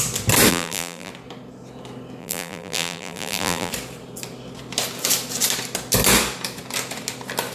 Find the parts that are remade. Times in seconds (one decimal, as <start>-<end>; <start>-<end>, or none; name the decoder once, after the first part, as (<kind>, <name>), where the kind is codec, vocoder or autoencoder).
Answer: 0.5-1.1 (vocoder, BigVGAN v2); 2.2-3.7